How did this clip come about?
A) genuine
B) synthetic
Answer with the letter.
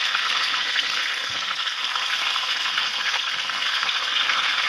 B